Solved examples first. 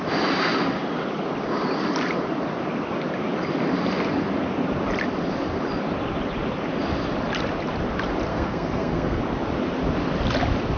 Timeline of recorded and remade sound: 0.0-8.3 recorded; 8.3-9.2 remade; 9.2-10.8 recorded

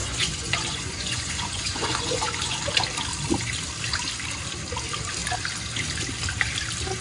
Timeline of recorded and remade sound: 0.0-2.6 remade; 2.6-7.0 recorded

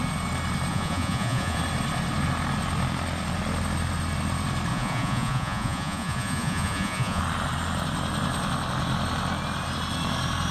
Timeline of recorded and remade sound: 0.0-0.7 recorded; 0.7-1.6 remade; 1.6-4.7 recorded; 4.7-7.2 remade; 7.2-10.5 recorded